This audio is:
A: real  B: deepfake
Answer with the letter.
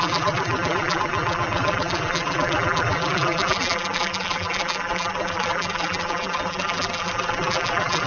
B